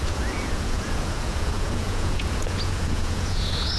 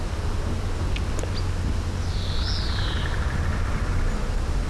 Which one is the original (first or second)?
second